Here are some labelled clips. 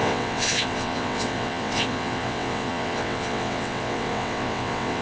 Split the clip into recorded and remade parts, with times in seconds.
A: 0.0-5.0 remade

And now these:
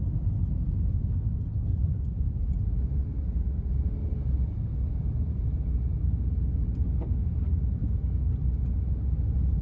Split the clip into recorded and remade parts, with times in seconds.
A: 0.0-9.6 recorded

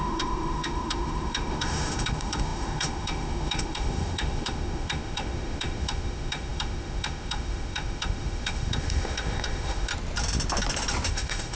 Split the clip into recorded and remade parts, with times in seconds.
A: 0.0-9.9 remade; 9.9-11.1 recorded; 11.1-11.6 remade

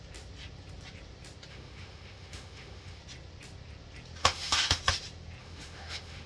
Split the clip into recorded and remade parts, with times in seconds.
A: 0.0-1.5 recorded; 1.5-3.0 remade; 3.0-4.2 recorded; 4.2-4.8 remade; 4.8-5.4 recorded; 5.4-6.3 remade

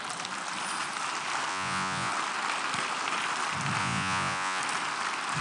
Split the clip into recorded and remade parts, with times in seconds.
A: 0.0-1.5 recorded; 1.5-2.1 remade; 2.1-3.8 recorded; 3.8-4.6 remade; 4.6-5.4 recorded

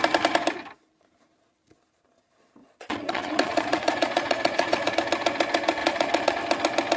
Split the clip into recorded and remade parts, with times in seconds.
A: 0.0-2.6 recorded; 2.6-4.9 remade; 4.9-5.8 recorded; 5.8-6.4 remade; 6.4-7.0 recorded

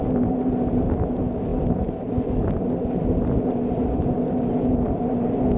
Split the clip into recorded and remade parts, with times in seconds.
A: 0.0-5.6 recorded